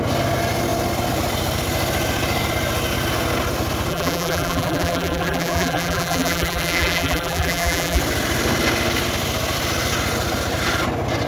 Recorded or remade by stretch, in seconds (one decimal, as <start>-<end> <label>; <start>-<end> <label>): 0.0-3.9 recorded; 3.9-8.0 remade; 8.0-11.3 recorded